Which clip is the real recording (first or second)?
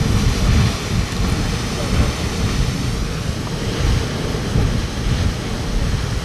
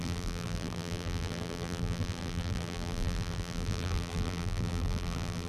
first